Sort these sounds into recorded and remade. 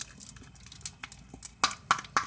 recorded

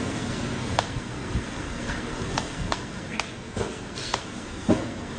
remade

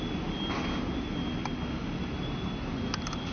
recorded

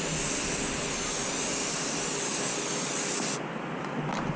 recorded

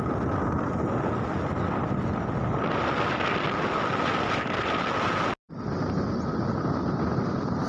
recorded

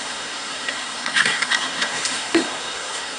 remade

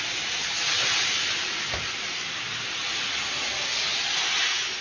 recorded